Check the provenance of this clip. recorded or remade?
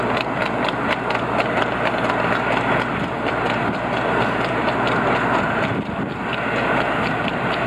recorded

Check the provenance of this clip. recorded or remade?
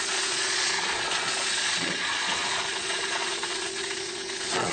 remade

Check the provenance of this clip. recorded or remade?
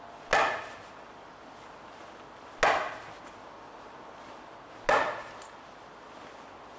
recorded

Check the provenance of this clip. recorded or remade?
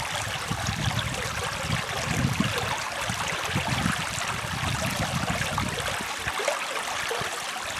recorded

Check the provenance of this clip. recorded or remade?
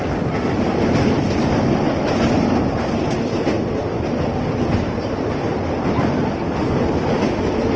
recorded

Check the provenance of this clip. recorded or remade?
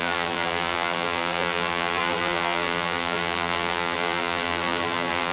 remade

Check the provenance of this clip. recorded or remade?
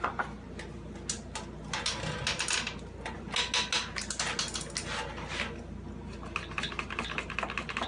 recorded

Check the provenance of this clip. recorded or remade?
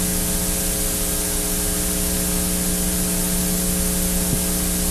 recorded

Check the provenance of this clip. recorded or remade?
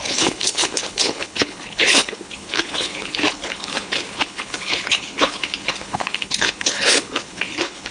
remade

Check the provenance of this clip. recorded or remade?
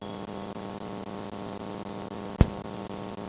recorded